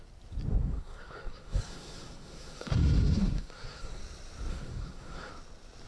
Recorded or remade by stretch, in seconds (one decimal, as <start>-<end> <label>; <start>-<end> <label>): 0.0-0.5 recorded; 0.5-4.0 remade; 4.0-4.5 recorded; 4.5-5.3 remade; 5.3-5.9 recorded

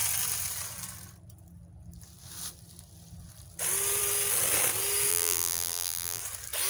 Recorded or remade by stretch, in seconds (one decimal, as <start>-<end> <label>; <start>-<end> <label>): 0.0-5.1 recorded; 5.1-6.2 remade; 6.2-6.7 recorded

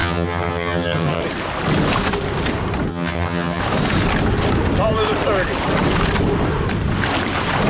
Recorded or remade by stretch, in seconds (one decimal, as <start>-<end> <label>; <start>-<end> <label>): 0.0-1.2 remade; 1.2-2.9 recorded; 2.9-3.6 remade; 3.6-7.7 recorded

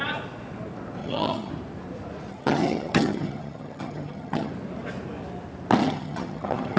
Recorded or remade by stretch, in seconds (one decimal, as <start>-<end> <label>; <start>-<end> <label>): 0.0-1.0 recorded; 1.0-1.5 remade; 1.5-2.3 recorded; 2.3-4.5 remade; 4.5-5.8 recorded; 5.8-6.8 remade

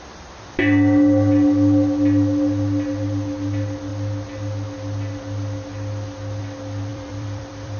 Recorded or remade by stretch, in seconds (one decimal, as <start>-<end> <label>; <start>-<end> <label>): 0.0-6.9 recorded; 6.9-7.8 remade

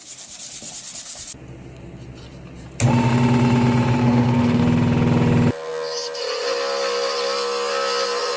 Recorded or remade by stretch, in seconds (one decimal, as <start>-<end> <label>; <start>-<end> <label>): 0.0-4.0 recorded; 4.0-4.6 remade; 4.6-8.4 recorded